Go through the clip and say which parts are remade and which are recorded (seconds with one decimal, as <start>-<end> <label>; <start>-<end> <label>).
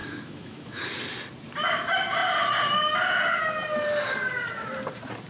0.0-0.8 remade; 0.8-5.3 recorded